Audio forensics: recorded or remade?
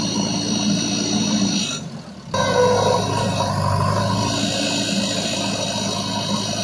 recorded